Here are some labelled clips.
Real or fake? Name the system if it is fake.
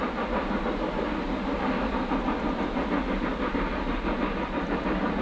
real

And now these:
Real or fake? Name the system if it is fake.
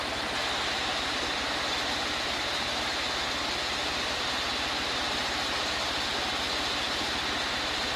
real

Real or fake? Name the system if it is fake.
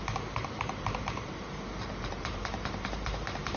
fake, vocoder, BigVGAN v2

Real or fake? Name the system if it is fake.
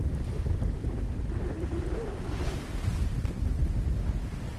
real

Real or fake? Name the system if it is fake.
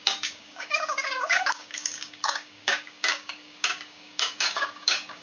fake, codec, DAC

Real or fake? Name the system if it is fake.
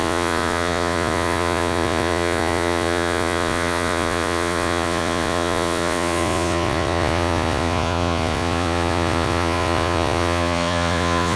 fake, vocoder, Vocos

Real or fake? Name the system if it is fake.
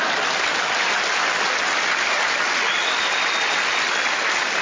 real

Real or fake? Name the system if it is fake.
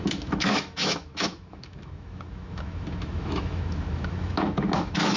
fake, autoencoder, DAC-VAE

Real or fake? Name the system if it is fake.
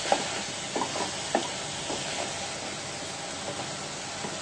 real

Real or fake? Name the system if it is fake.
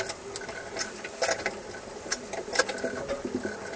real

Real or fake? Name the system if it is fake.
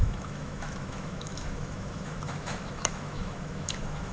fake, autoencoder, DAC-VAE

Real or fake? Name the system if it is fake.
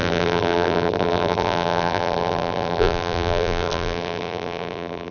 fake, vocoder, BigVGAN v2